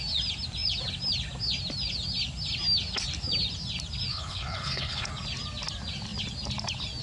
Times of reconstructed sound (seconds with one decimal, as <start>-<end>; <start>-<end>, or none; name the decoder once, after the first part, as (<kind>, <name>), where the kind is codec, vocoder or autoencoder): 4.1-5.1 (codec, HILCodec)